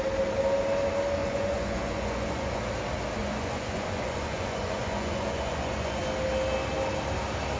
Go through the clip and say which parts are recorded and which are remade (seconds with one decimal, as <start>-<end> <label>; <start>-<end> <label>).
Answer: 0.0-1.2 recorded; 1.2-2.6 remade; 2.6-3.2 recorded; 3.2-6.0 remade; 6.0-7.6 recorded